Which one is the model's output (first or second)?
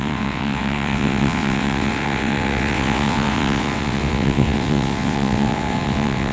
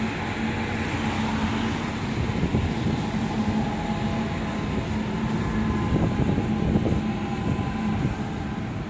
first